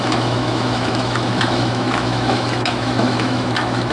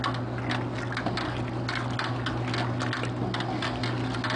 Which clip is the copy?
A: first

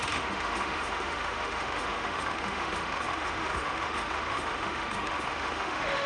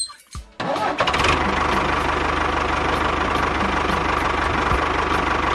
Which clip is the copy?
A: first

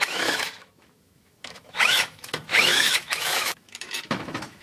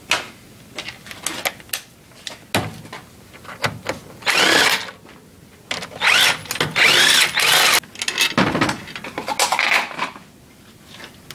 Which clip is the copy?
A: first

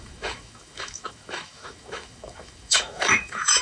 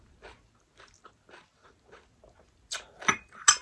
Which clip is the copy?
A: first